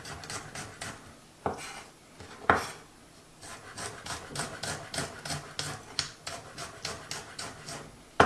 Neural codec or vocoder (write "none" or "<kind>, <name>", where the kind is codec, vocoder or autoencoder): none